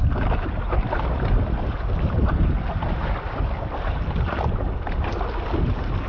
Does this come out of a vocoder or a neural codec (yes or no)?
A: no